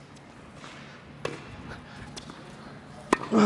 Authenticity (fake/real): real